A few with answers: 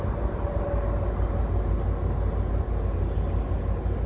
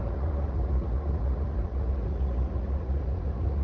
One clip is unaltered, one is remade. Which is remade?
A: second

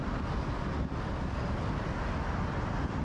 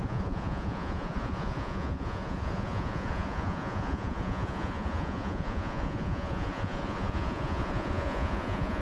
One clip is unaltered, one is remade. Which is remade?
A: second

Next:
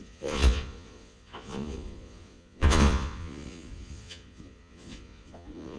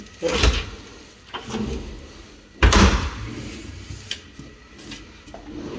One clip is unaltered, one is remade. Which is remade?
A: first